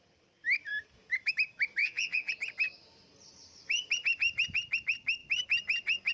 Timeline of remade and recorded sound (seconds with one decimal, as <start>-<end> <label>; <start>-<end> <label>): 0.0-1.8 recorded; 1.8-2.3 remade; 2.3-6.1 recorded